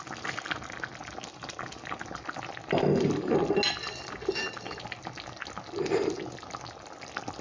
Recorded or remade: recorded